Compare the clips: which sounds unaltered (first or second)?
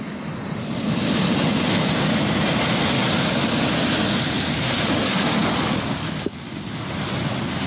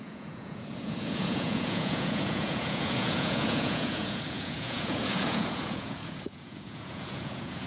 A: first